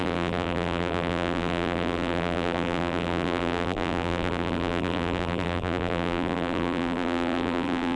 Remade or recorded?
remade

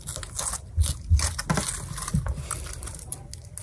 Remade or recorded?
recorded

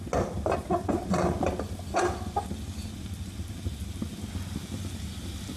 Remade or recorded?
recorded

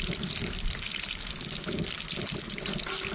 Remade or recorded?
recorded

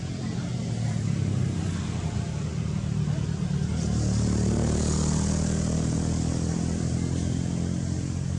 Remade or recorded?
recorded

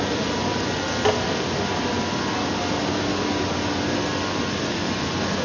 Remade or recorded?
recorded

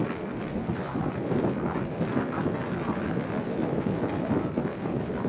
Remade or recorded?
recorded